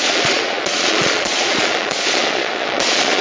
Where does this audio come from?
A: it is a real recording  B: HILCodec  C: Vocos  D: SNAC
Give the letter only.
C